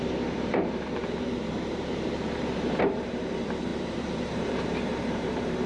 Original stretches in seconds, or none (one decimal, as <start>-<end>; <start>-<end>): 1.0-1.5